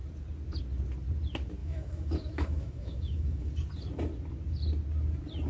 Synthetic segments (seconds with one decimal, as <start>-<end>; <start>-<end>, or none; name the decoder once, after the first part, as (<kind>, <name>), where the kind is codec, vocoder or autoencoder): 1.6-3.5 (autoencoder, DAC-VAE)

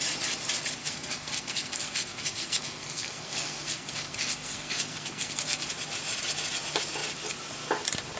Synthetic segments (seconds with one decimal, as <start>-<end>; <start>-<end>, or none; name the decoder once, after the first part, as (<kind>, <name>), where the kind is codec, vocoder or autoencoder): 0.8-5.7 (codec, SNAC)

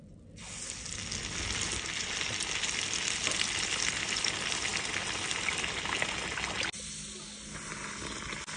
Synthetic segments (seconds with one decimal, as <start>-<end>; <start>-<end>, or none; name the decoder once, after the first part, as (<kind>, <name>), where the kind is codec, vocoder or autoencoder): none

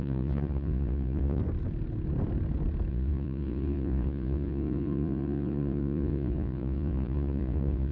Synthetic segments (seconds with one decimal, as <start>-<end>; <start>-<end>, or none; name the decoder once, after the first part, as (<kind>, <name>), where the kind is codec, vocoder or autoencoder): 0.0-1.4 (vocoder, Vocos); 2.9-7.9

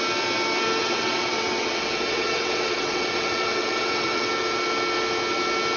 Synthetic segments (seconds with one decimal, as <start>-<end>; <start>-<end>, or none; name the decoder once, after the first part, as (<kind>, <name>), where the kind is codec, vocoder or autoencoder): 0.8-4.3 (vocoder, WaveNeXt)